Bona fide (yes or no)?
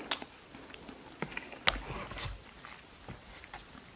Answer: yes